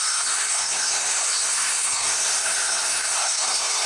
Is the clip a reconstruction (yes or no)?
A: yes